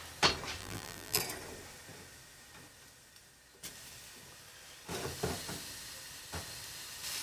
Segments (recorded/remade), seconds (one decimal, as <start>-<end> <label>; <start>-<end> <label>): 0.0-0.6 recorded; 0.6-1.2 remade; 1.2-7.2 recorded

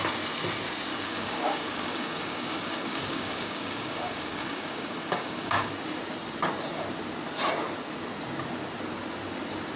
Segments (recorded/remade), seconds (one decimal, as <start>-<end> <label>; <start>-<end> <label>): 0.0-0.9 recorded; 0.9-5.7 remade; 5.7-9.8 recorded

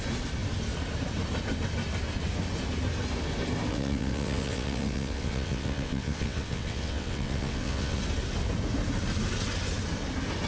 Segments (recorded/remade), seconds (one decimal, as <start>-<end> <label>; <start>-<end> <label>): 0.0-3.7 recorded; 3.7-8.0 remade; 8.0-10.5 recorded

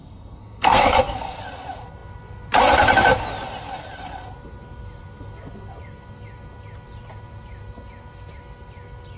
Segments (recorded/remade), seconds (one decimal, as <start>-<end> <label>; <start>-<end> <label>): 0.0-1.4 remade; 1.4-9.2 recorded

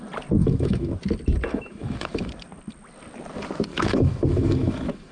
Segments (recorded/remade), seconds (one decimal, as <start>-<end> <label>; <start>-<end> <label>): 0.0-0.4 recorded; 0.4-0.9 remade; 0.9-1.5 recorded; 1.5-2.3 remade; 2.3-3.7 recorded; 3.7-5.1 remade

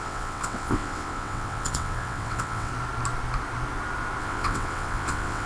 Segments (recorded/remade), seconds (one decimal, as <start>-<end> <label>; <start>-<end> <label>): 0.0-2.7 remade; 2.7-4.2 recorded; 4.2-5.5 remade